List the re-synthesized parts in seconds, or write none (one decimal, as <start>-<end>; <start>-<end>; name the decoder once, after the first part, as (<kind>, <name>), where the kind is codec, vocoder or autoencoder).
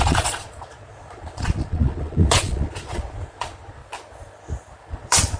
0.0-3.8 (vocoder, Vocos); 4.9-5.4